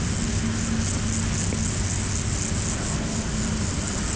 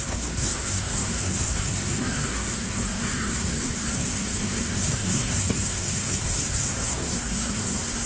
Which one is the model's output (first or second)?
second